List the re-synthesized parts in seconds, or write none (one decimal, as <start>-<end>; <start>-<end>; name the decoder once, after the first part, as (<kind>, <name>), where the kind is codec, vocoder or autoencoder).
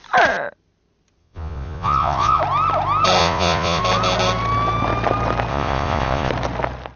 1.2-2.4 (vocoder, Vocos); 3.2-3.8; 5.5-6.3